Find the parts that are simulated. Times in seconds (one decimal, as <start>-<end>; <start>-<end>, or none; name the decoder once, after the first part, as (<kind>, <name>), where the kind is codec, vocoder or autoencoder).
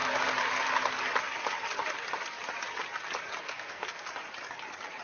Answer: 3.4-4.0 (codec, SNAC)